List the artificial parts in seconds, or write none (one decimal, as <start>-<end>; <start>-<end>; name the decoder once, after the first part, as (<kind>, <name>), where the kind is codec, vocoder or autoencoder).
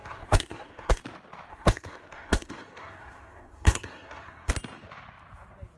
0.0-1.0 (codec, SNAC); 1.5-4.5